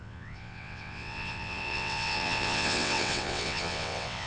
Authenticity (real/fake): fake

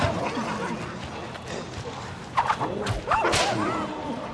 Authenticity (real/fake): real